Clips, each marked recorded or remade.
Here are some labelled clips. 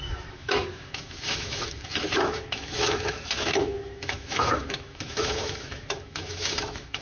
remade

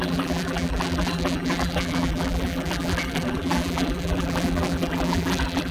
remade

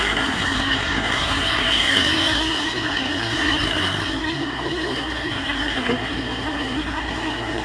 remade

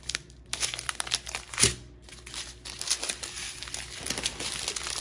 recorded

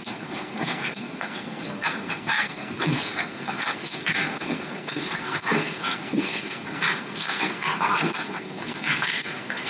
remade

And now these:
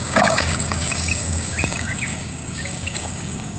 remade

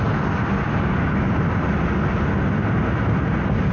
recorded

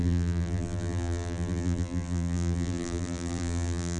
remade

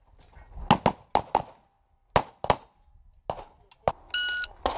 recorded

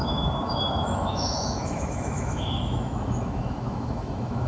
remade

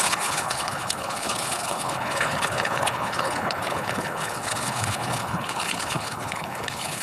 remade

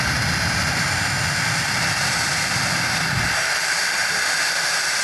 recorded